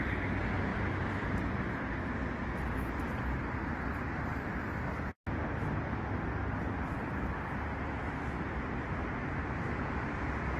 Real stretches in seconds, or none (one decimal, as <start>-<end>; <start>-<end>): 0.0-0.7; 1.4-10.6